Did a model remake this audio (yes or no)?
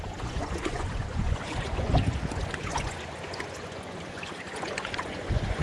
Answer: yes